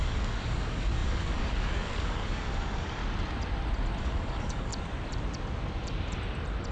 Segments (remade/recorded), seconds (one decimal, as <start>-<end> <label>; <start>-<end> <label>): 0.0-3.0 remade; 3.0-4.0 recorded; 4.0-4.7 remade; 4.7-6.7 recorded